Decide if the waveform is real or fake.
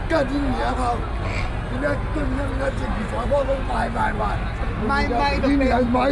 real